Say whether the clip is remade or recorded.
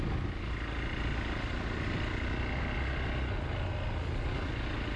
recorded